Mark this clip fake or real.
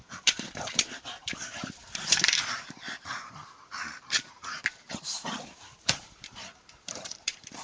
fake